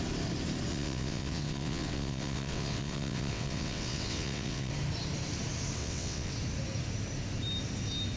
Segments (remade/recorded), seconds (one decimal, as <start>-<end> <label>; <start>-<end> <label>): 0.0-0.7 recorded; 0.7-4.7 remade; 4.7-5.8 recorded; 5.8-6.3 remade; 6.3-8.2 recorded